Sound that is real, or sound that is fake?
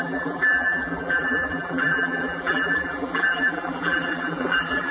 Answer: fake